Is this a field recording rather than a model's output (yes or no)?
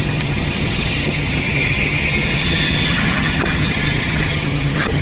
no